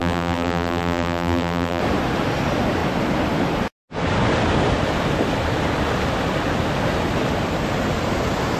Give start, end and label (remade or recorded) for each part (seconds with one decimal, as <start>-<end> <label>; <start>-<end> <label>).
0.0-1.8 remade; 1.8-8.6 recorded